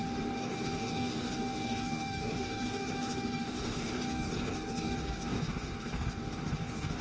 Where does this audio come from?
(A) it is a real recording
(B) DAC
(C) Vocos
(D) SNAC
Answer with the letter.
B